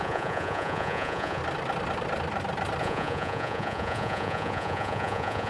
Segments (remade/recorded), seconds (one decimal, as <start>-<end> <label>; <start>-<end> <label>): 0.0-1.4 remade; 1.4-2.8 recorded; 2.8-5.5 remade

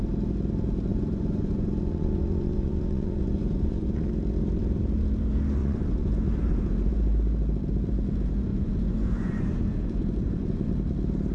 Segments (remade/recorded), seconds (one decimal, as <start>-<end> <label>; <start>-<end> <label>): 0.0-0.9 recorded; 0.9-4.1 remade; 4.1-5.6 recorded; 5.6-6.9 remade; 6.9-8.5 recorded; 8.5-10.7 remade; 10.7-11.3 recorded

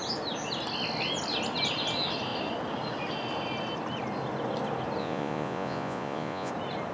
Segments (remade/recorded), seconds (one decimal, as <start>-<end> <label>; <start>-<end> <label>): 0.0-5.0 recorded; 5.0-6.5 remade; 6.5-6.9 recorded

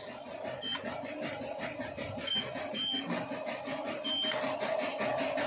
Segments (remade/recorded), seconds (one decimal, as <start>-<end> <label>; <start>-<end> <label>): 0.0-5.5 recorded

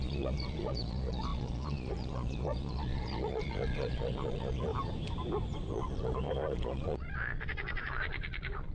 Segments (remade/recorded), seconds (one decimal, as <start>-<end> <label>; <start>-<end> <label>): 0.0-4.7 remade; 4.7-5.7 recorded; 5.7-8.7 remade

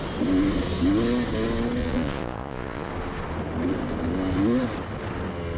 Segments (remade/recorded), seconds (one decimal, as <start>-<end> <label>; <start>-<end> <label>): 0.0-1.8 recorded; 1.8-2.9 remade; 2.9-5.6 recorded

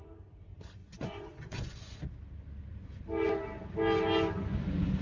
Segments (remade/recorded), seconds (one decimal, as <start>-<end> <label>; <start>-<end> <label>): 0.0-0.8 recorded; 0.8-2.0 remade; 2.0-5.0 recorded